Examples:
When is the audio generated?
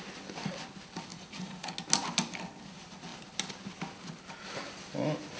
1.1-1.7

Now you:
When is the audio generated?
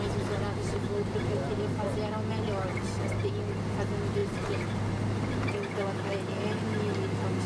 none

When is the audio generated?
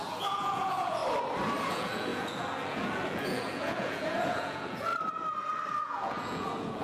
0.0-1.0; 1.7-4.9; 5.7-6.8